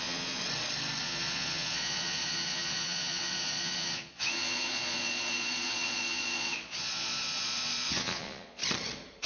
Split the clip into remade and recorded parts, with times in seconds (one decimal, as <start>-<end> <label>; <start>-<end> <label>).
0.0-0.4 remade; 0.4-1.0 recorded; 1.0-8.6 remade; 8.6-9.3 recorded